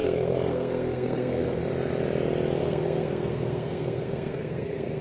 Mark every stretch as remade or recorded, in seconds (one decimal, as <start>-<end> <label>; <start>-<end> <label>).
0.0-1.6 remade; 1.6-2.6 recorded; 2.6-5.0 remade